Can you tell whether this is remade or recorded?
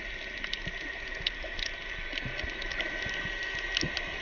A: recorded